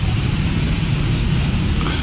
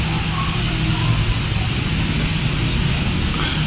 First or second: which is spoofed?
first